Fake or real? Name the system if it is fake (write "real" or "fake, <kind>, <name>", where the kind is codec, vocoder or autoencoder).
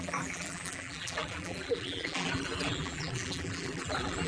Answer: fake, vocoder, BigVGAN v2